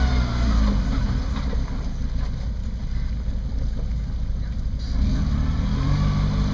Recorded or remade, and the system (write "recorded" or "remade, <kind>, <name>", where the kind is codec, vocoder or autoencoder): recorded